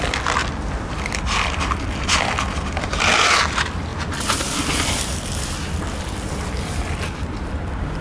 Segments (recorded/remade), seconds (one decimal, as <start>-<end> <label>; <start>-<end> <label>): 0.0-8.0 recorded